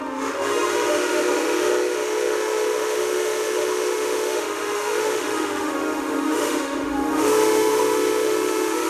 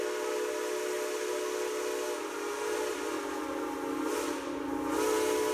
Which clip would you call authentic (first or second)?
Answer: second